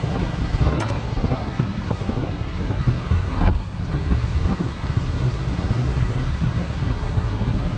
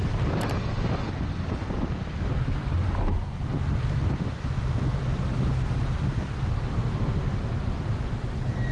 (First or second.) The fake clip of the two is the first